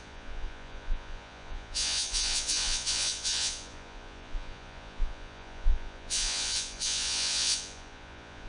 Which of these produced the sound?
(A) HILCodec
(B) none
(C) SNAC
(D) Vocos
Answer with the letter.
D